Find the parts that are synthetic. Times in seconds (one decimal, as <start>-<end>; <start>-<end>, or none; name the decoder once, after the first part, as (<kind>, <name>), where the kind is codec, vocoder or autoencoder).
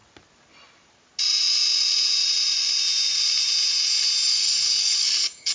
4.3-5.5 (codec, DAC)